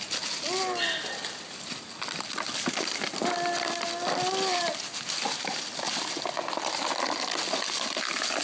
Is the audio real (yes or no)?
yes